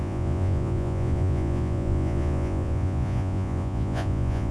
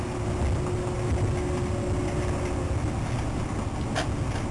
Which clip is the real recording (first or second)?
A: second